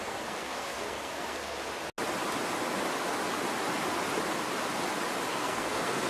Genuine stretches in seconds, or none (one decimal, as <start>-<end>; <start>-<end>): 1.6-5.3